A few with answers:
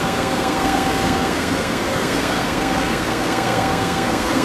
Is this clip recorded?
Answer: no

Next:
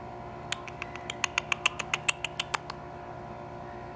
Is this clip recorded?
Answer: yes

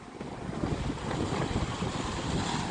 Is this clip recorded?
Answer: yes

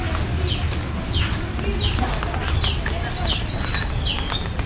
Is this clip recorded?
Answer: yes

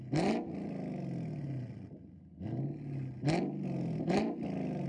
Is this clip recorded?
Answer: yes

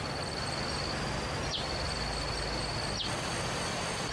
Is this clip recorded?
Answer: yes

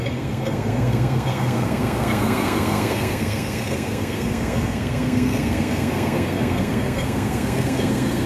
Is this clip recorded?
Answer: no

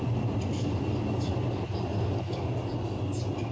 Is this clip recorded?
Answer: yes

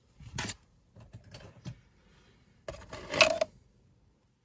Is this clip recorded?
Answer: yes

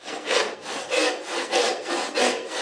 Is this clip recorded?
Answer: no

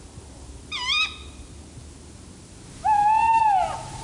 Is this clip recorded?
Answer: yes